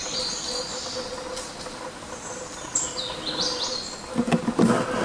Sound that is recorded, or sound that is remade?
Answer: recorded